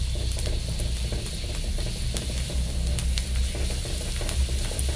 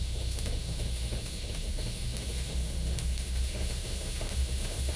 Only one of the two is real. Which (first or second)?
first